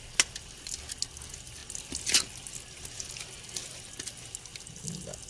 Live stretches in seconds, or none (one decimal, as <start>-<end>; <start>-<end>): 0.0-5.3